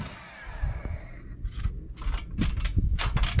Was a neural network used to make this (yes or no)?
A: no